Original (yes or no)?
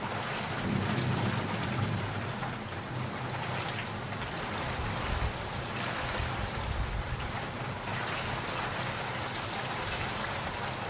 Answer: yes